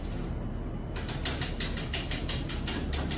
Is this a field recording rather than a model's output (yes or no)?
yes